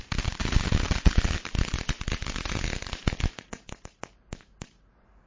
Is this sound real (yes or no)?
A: no